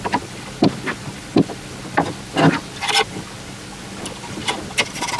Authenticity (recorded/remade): recorded